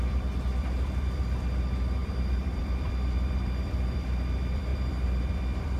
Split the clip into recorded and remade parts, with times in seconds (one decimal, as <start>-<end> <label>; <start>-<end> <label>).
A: 0.0-5.8 remade